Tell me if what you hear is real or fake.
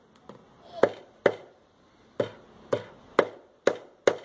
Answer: real